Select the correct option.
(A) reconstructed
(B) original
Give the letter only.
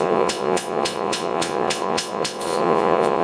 A